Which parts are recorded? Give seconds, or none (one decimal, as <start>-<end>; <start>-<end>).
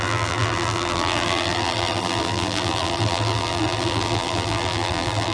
none